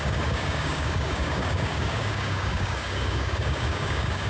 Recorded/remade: remade